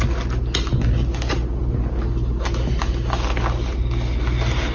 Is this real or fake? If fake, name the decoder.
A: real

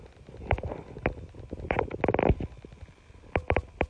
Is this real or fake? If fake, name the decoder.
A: fake, vocoder, BigVGAN v2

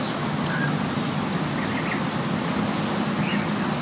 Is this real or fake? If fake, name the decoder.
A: real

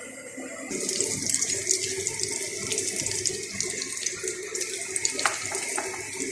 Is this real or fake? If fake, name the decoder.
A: real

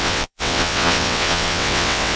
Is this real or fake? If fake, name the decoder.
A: fake, vocoder, WaveNeXt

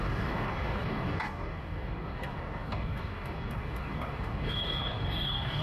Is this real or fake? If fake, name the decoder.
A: fake, codec, DAC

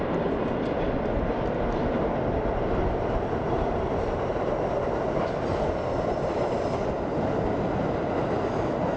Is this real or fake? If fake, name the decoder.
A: real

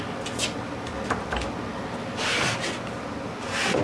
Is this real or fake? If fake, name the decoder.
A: real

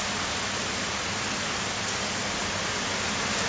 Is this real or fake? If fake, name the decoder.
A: real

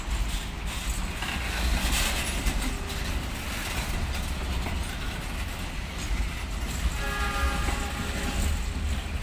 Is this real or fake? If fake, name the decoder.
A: real